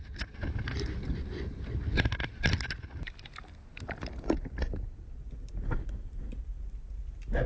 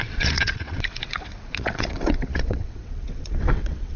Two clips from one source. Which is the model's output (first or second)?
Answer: second